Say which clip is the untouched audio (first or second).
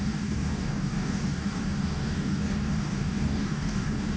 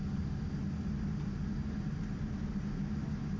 second